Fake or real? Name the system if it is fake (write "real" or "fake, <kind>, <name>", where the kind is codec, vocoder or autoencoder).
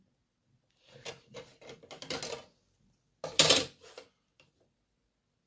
real